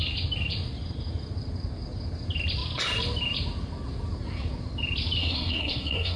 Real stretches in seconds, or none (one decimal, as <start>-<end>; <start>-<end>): 0.0-5.2